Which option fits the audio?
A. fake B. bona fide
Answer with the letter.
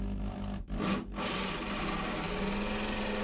B